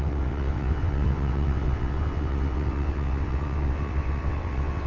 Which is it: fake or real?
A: fake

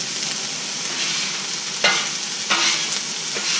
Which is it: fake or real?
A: real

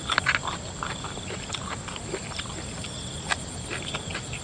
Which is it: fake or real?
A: real